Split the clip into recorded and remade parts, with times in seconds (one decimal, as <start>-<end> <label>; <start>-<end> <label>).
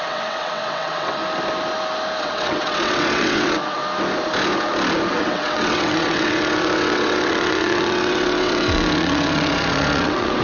0.0-1.2 remade; 1.2-2.2 recorded; 2.2-3.8 remade; 3.8-5.1 recorded; 5.1-10.4 remade